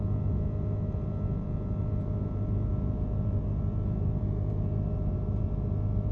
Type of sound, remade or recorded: recorded